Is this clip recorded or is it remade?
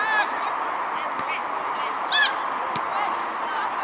recorded